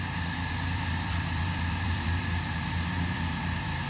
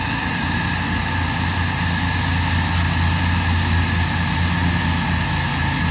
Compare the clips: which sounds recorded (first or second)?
second